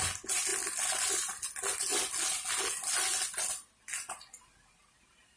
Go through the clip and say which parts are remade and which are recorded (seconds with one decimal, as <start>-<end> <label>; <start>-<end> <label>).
0.0-5.4 recorded